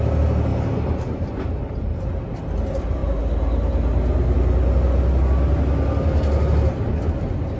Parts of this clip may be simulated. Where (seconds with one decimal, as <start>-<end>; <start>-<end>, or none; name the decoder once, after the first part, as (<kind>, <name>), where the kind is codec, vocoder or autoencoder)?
0.5-2.1 (vocoder, BigVGAN v2)